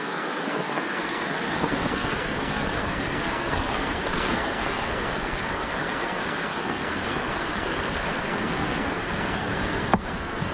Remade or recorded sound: remade